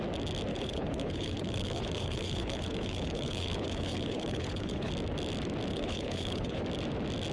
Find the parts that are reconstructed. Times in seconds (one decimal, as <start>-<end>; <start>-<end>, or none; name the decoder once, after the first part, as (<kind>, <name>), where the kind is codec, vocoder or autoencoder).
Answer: 0.5-4.9 (codec, HILCodec); 5.7-6.6